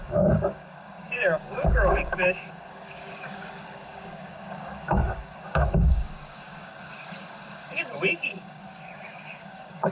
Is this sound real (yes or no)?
no